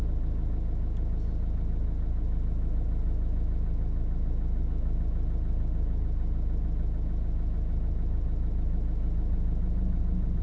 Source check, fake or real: real